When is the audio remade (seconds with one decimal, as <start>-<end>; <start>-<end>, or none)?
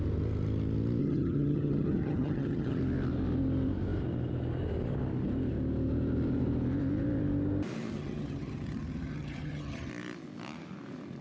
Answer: 1.0-2.8; 7.9-9.9